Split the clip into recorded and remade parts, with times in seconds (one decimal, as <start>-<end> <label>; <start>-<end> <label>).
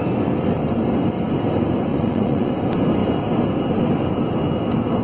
0.0-1.9 recorded; 1.9-2.5 remade; 2.5-5.0 recorded